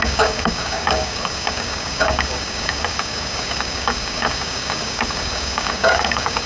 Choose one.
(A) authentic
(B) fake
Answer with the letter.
B